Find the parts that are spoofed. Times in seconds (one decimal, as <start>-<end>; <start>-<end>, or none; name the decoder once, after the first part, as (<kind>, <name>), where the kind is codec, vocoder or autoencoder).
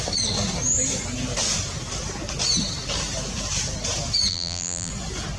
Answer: 4.3-4.9 (vocoder, BigVGAN v2)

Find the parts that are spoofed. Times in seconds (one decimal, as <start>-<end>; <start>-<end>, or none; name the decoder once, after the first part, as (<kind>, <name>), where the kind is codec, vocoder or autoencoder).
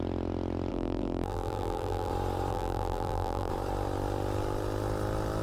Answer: 0.7-2.1 (vocoder, BigVGAN v2); 2.5-3.5